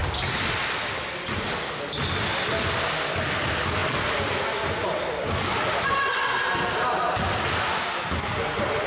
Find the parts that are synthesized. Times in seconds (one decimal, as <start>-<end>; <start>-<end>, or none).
none